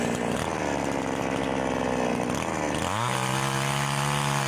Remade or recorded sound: recorded